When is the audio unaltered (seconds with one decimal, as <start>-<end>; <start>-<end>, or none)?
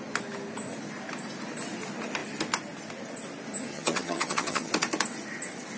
0.0-3.7; 4.7-5.8